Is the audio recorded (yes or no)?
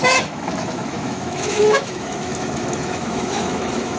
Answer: no